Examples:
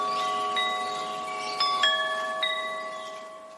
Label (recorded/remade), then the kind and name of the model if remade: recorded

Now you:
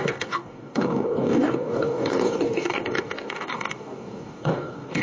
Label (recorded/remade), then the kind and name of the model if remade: remade, codec, DAC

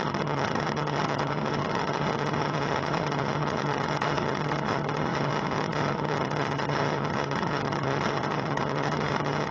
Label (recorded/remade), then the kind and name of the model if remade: remade, vocoder, HiFi-GAN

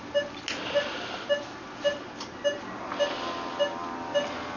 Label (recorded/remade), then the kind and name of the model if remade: recorded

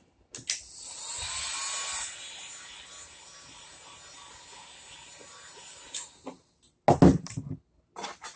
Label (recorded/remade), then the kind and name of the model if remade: recorded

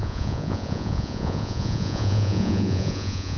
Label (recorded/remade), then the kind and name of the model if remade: remade, vocoder, Vocos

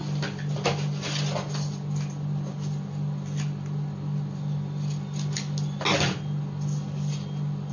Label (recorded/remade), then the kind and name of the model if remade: recorded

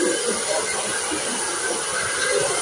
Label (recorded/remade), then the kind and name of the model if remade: recorded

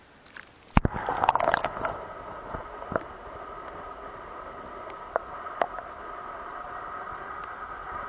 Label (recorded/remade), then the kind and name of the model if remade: recorded